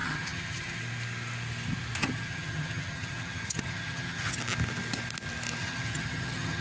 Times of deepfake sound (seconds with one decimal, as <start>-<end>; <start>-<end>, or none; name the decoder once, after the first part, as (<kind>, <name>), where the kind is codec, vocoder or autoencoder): 0.0-0.8 (vocoder, HiFi-GAN); 2.0-4.4; 5.6-6.6